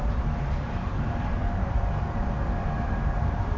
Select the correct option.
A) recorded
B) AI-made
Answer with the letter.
B